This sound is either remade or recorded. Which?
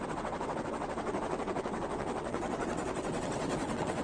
remade